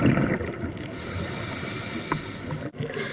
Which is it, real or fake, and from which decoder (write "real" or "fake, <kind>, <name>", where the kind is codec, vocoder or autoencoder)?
real